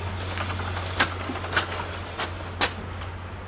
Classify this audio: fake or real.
real